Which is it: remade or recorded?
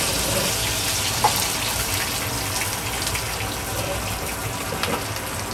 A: recorded